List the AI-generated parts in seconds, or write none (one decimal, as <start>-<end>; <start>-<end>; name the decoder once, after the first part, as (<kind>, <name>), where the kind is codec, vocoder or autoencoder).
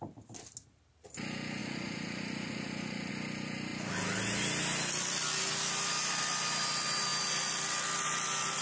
1.6-3.1 (vocoder, Vocos)